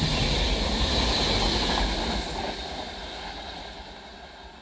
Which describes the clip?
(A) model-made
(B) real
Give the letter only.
B